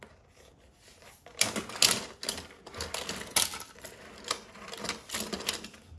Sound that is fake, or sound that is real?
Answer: real